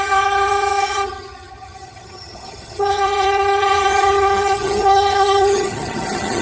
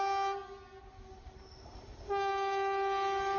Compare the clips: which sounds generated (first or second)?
first